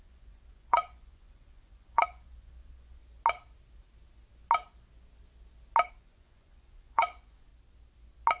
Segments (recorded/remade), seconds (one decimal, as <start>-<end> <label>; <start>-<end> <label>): 0.0-3.0 remade; 3.0-5.9 recorded; 5.9-7.5 remade; 7.5-8.4 recorded